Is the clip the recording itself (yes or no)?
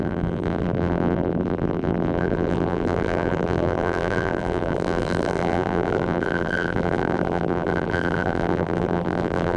no